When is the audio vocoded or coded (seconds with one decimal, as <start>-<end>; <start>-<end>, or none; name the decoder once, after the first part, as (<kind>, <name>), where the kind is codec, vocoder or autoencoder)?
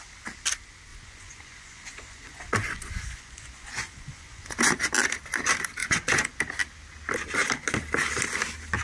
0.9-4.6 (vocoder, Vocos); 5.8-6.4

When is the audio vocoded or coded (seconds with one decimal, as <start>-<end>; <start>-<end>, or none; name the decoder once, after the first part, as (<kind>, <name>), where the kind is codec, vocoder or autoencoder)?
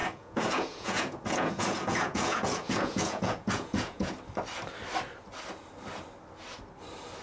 0.0-4.1 (vocoder, Vocos)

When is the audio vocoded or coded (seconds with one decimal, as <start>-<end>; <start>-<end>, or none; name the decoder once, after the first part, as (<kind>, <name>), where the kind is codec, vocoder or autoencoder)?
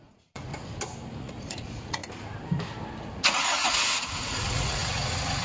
0.0-0.5 (vocoder, Vocos); 1.2-2.0; 3.0-5.4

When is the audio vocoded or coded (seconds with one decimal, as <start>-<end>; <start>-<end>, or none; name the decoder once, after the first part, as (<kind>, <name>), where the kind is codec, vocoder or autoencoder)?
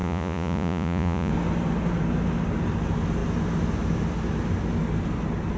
0.0-1.3 (vocoder, Vocos)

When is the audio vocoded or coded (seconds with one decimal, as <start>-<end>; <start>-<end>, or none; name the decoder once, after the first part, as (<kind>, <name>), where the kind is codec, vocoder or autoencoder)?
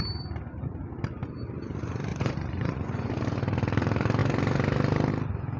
2.1-3.1 (vocoder, Vocos)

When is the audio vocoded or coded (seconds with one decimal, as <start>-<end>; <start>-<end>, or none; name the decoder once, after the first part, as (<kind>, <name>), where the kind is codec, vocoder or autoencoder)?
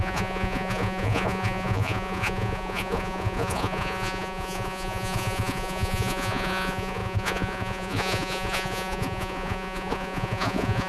0.0-10.9 (vocoder, Vocos)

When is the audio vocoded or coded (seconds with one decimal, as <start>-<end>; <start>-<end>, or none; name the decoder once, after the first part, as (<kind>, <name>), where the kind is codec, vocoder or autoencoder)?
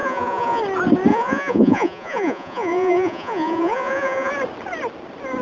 0.0-0.6 (vocoder, Vocos); 1.1-4.3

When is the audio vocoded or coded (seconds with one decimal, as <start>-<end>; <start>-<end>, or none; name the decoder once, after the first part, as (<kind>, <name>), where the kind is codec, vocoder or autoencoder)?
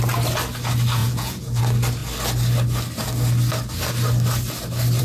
1.0-1.6 (vocoder, Vocos)